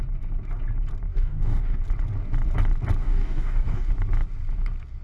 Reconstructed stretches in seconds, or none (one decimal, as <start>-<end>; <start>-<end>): 1.1-1.8; 3.0-3.9